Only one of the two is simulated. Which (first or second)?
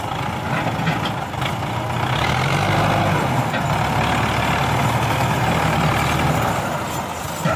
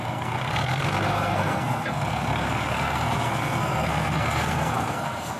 second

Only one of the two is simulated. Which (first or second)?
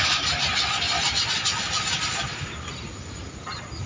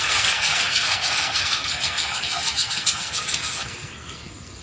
second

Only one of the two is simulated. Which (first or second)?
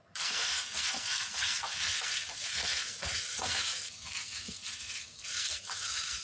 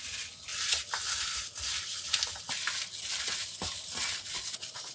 first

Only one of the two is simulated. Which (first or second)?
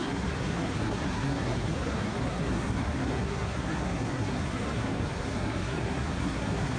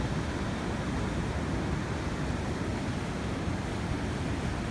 first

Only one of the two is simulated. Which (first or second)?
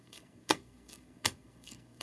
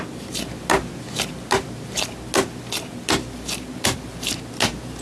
first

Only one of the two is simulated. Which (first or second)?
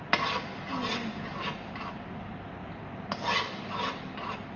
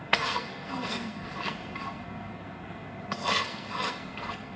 second